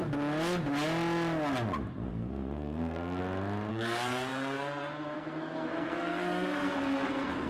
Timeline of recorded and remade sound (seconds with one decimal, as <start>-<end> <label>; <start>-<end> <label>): 0.0-2.1 recorded; 2.1-3.2 remade; 3.2-3.7 recorded; 3.7-7.5 remade